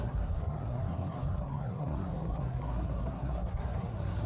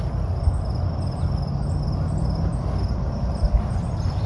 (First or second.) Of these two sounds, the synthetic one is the first